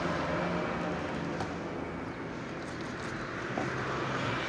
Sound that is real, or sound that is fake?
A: real